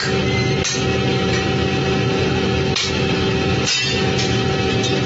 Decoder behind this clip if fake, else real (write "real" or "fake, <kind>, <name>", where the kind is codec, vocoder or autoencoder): real